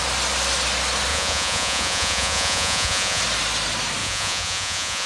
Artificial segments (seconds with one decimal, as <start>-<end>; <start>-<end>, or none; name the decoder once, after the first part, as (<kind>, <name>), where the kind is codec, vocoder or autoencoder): 1.1-3.2 (vocoder, Vocos); 4.0-5.1